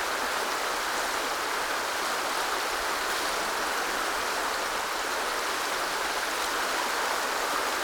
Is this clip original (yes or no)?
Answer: yes